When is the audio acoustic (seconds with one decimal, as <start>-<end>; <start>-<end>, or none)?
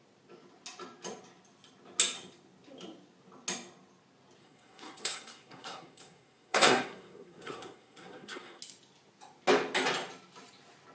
0.0-4.4; 8.6-10.9